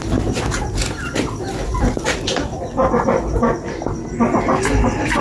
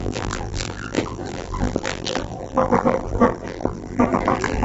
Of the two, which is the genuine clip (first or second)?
first